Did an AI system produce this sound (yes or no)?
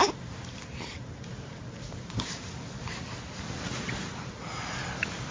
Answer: no